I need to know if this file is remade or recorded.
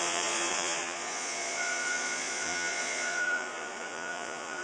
remade